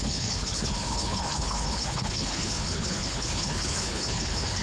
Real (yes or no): no